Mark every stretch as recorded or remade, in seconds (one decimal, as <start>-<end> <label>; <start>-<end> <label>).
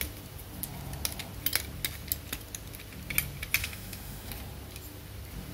0.0-3.6 recorded; 3.6-4.3 remade; 4.3-5.5 recorded